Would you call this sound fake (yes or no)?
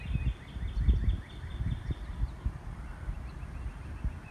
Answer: no